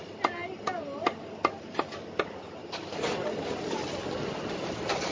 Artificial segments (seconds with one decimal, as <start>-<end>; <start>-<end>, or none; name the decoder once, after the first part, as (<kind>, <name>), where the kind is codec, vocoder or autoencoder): none